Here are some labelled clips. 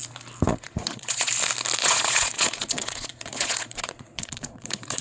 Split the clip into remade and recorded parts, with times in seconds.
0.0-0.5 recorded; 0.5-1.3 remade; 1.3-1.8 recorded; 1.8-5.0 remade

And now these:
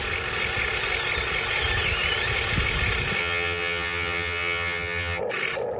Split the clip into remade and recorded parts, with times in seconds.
0.0-3.2 recorded; 3.2-5.2 remade; 5.2-5.8 recorded

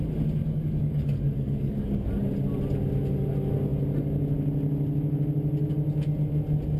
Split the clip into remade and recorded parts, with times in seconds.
0.0-0.4 recorded; 0.4-2.1 remade; 2.1-6.8 recorded

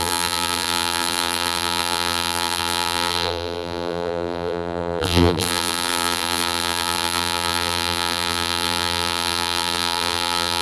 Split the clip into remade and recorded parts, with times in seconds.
0.0-10.6 remade

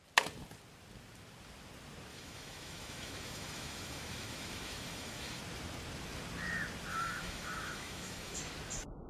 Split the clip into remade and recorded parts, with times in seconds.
0.0-2.1 recorded; 2.1-5.4 remade; 5.4-6.9 recorded; 6.9-8.4 remade; 8.4-9.1 recorded

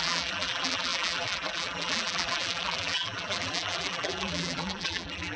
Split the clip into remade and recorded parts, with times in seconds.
0.0-5.4 remade